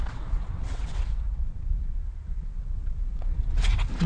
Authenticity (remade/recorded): remade